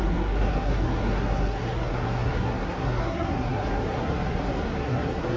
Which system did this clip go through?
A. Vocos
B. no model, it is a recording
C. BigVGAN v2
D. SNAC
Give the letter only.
D